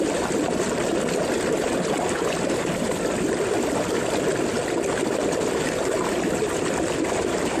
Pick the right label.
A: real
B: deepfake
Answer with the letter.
A